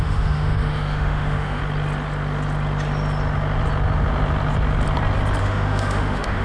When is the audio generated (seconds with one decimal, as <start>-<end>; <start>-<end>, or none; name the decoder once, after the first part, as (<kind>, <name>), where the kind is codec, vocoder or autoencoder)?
0.0-1.6 (autoencoder, DAC-VAE); 5.4-6.4